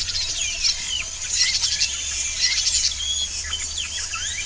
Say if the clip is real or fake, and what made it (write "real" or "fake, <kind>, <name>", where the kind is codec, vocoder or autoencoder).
real